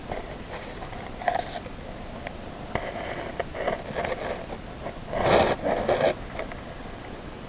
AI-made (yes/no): no